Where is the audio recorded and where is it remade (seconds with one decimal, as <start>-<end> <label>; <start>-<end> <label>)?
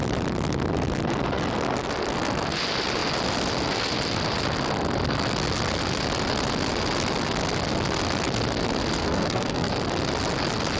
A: 0.0-9.0 recorded; 9.0-9.7 remade; 9.7-10.8 recorded